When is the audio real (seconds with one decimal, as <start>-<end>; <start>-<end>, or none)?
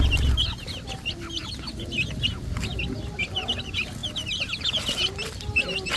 0.0-6.0